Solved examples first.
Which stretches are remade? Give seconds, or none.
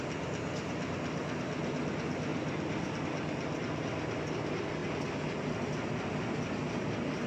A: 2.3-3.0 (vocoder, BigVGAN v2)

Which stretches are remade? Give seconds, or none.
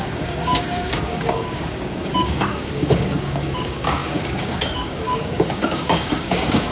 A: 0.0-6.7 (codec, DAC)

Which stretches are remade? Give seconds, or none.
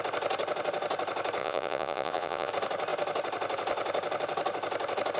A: 1.4-2.5 (vocoder, Vocos)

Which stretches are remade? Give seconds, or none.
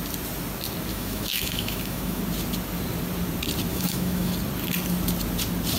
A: 0.9-2.2 (autoencoder, DAC-VAE); 3.7-4.3